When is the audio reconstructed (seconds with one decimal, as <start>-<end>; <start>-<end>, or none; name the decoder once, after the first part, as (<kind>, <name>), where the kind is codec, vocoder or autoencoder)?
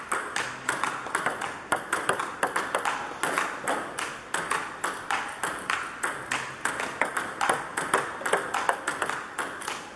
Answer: 1.7-2.2 (vocoder, BigVGAN v2)